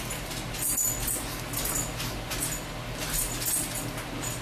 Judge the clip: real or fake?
real